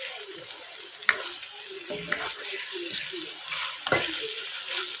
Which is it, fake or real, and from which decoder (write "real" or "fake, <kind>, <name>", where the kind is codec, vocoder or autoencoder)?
real